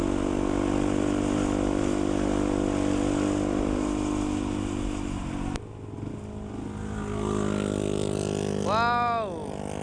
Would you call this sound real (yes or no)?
yes